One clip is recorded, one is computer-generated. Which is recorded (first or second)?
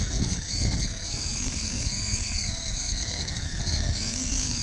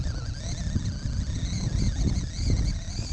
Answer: second